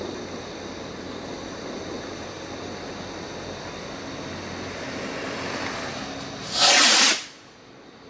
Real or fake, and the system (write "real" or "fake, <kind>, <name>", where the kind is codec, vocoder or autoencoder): real